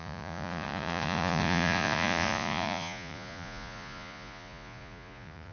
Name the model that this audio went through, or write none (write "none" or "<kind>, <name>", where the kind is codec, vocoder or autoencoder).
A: vocoder, Vocos